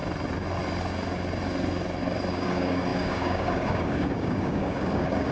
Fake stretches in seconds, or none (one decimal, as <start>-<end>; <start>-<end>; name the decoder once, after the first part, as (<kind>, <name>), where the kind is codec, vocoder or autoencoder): 2.3-5.3 (codec, DAC)